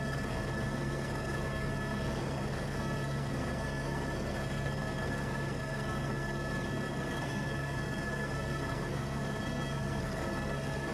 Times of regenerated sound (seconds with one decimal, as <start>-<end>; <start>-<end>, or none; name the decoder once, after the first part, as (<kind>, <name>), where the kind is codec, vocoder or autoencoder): 0.0-10.9 (codec, SNAC)